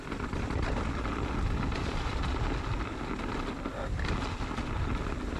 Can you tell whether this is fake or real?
real